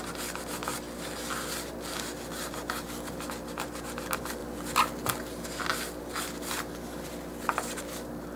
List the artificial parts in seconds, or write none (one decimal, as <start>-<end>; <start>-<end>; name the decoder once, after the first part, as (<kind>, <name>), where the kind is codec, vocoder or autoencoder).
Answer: none